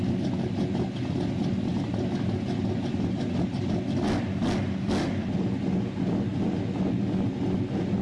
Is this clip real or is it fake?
real